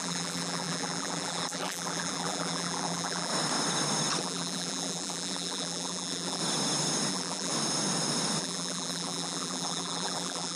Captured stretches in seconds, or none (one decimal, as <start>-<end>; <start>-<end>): 3.3-4.2; 6.4-7.1; 7.5-8.4